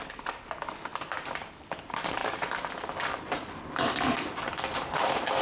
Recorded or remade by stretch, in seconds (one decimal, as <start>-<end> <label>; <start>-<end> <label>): 0.0-2.2 recorded; 2.2-2.7 remade; 2.7-5.4 recorded